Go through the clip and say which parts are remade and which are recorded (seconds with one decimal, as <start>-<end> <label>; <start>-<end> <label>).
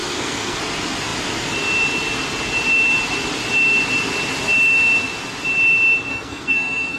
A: 0.0-0.6 remade; 0.6-6.1 recorded; 6.1-7.0 remade